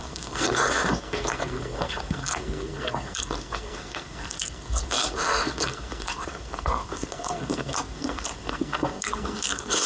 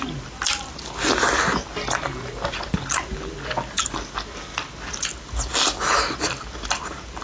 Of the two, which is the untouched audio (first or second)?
second